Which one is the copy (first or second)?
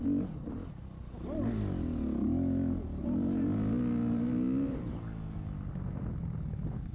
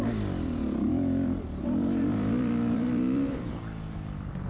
second